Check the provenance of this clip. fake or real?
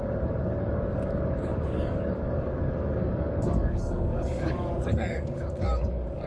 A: fake